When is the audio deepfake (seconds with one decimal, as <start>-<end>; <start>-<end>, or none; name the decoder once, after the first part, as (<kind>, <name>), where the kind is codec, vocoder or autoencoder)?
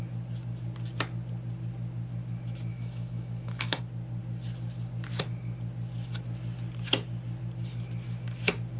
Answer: 2.7-3.8 (autoencoder, DAC-VAE)